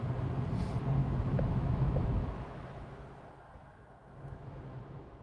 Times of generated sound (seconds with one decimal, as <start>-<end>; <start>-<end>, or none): 1.0-3.2; 3.6-5.2